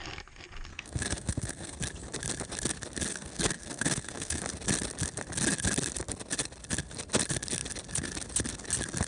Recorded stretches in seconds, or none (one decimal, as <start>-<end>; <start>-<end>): 0.0-0.7; 1.8-3.1; 4.4-9.1